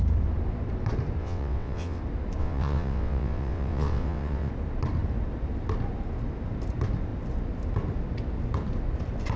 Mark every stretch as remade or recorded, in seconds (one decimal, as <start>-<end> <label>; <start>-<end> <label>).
0.0-1.2 recorded; 1.2-2.0 remade; 2.0-2.4 recorded; 2.4-4.5 remade; 4.5-9.4 recorded